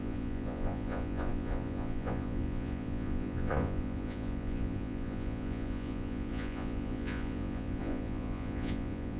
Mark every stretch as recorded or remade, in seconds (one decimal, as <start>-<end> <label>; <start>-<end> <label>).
0.0-9.2 remade